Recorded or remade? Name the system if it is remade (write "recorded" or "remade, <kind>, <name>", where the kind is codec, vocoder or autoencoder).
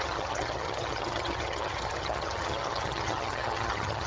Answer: remade, vocoder, HiFi-GAN